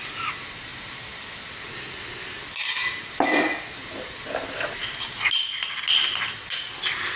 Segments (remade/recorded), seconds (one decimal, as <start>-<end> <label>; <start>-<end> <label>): 0.0-7.2 recorded